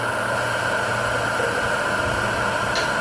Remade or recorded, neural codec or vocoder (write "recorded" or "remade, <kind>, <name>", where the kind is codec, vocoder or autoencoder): recorded